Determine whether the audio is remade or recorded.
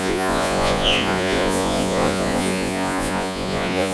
remade